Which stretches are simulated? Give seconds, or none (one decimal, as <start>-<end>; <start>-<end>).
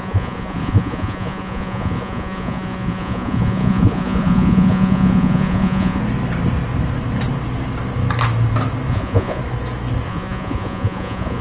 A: 0.0-6.0; 8.9-9.4; 10.1-11.4